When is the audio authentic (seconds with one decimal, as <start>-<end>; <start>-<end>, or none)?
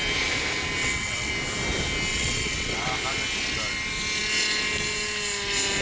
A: 0.0-0.8; 1.3-2.1; 2.9-5.8